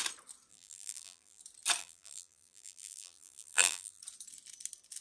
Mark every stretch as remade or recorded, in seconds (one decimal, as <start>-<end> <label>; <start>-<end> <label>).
0.0-0.5 recorded; 0.5-1.4 remade; 1.4-1.8 recorded; 1.8-4.0 remade; 4.0-5.0 recorded